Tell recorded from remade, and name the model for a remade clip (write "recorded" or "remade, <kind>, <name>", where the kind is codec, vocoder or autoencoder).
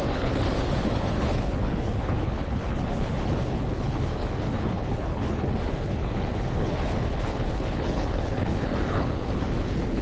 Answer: remade, codec, HILCodec